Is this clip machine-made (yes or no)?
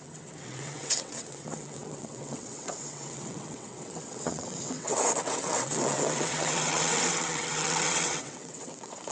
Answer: yes